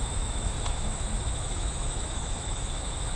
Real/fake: fake